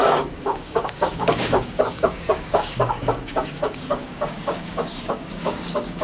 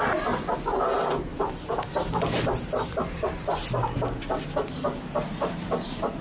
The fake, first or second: first